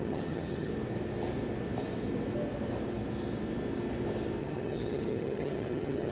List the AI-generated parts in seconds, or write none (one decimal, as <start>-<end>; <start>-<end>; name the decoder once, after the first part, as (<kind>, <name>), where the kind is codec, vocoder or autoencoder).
0.0-0.7 (vocoder, HiFi-GAN); 4.4-6.1